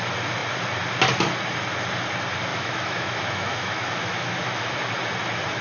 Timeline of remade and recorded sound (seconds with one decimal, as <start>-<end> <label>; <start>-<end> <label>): 0.0-2.5 recorded; 2.5-4.7 remade; 4.7-5.6 recorded